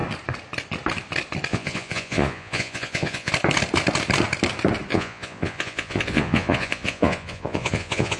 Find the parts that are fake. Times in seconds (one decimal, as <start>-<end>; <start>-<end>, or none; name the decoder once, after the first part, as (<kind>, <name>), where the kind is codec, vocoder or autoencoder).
1.5-3.3 (vocoder, Vocos); 4.9-8.2